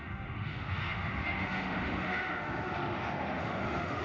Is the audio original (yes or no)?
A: no